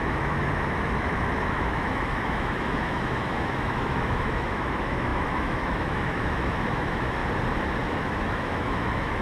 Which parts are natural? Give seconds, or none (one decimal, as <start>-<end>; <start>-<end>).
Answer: 7.2-7.8